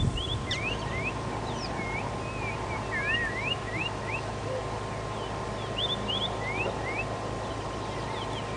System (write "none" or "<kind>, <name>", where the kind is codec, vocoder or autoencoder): none